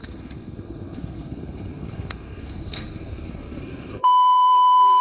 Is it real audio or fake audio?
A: fake